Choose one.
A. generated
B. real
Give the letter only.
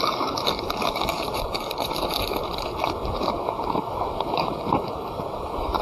A